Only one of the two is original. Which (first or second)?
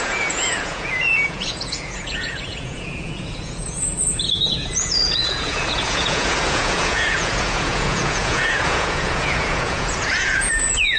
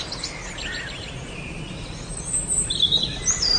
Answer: second